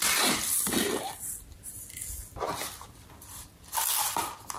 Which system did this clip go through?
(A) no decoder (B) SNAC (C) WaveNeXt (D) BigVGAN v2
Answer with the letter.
A